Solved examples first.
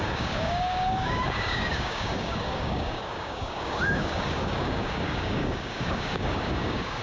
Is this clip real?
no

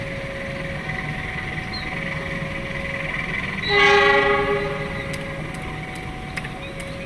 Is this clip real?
yes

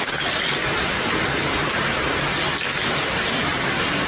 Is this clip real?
yes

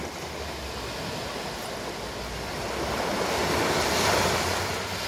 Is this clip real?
yes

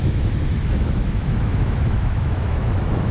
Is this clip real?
no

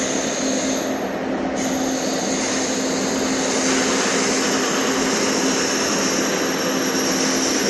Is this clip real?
yes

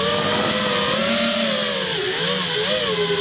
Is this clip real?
yes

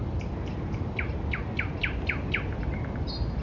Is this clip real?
yes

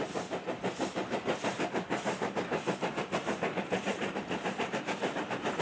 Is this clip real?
no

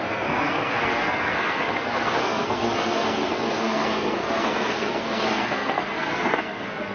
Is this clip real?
no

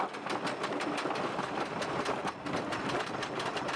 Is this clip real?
yes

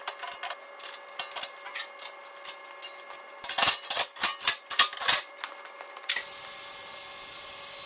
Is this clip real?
yes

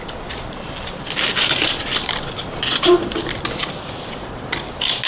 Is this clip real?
no